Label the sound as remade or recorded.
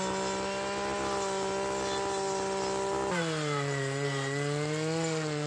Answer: recorded